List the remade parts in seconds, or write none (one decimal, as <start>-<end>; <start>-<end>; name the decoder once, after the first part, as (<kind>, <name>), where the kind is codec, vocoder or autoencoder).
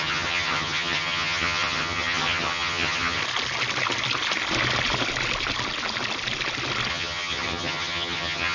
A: 0.0-3.2 (vocoder, HiFi-GAN); 6.9-8.5